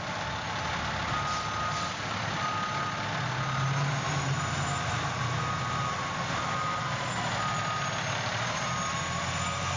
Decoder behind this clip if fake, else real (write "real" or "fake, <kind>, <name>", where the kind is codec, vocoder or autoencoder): real